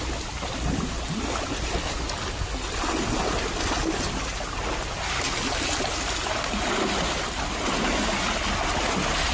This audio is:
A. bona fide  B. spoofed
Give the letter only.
A